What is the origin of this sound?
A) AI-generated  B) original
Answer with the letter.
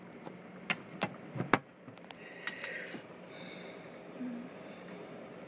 B